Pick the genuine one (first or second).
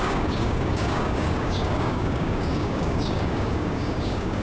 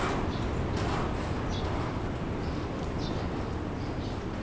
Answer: second